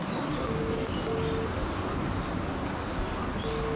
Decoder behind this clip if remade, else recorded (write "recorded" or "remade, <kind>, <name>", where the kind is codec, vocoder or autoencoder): recorded